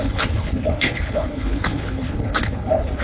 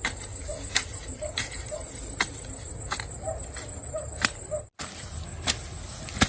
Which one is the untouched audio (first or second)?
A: second